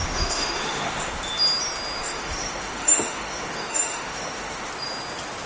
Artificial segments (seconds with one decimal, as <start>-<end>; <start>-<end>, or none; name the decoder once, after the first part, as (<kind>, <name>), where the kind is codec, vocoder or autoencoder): 0.0-1.1 (autoencoder, DAC-VAE); 2.0-4.7